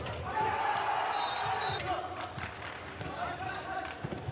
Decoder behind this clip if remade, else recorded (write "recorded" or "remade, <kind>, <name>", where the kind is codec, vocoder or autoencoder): recorded